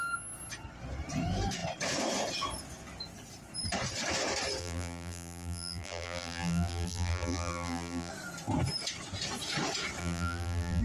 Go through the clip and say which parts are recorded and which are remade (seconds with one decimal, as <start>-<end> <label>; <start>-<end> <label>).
0.0-4.6 recorded; 4.6-8.1 remade; 8.1-10.0 recorded; 10.0-10.8 remade